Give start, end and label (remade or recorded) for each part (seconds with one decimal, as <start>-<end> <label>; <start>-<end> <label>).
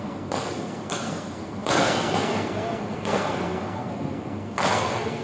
0.0-5.2 remade